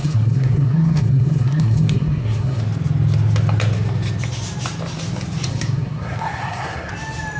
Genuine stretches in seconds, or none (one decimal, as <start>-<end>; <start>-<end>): 2.6-5.5; 6.9-7.4